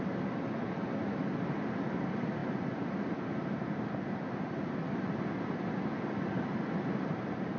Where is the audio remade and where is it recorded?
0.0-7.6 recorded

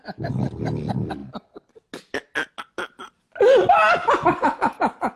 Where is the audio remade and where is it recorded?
0.0-5.2 recorded